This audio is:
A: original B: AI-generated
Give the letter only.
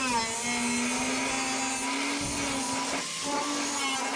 A